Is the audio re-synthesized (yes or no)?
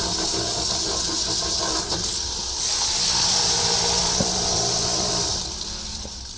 no